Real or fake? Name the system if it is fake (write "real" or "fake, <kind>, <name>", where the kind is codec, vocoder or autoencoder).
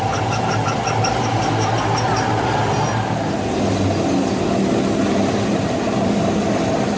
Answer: real